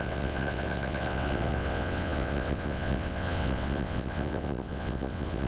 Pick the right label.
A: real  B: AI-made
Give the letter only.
B